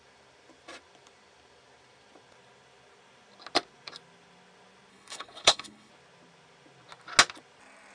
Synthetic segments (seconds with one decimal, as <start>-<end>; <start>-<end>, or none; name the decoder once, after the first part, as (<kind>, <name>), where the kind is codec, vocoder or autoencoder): 4.9-5.9 (codec, HILCodec)